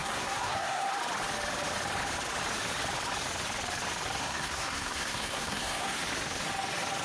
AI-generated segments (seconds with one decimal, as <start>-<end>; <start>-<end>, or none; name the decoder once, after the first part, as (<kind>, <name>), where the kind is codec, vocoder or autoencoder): 0.0-0.9 (codec, SNAC); 4.2-6.0